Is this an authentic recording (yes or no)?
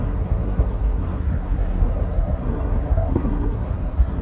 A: no